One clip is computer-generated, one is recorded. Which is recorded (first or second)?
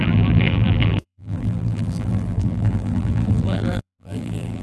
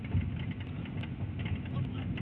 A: second